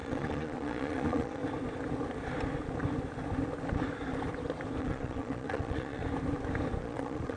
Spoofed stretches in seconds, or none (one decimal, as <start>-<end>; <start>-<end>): 0.0-1.4; 4.8-6.0; 6.8-7.4

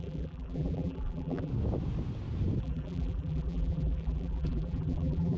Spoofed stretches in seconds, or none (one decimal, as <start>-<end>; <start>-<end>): 0.0-1.5; 2.6-5.4

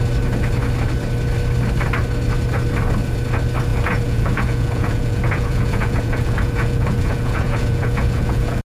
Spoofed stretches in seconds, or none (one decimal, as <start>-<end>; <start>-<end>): 3.7-8.6

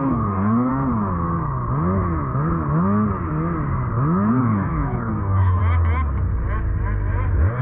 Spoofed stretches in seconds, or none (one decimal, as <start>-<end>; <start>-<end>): 0.0-0.7; 4.3-5.6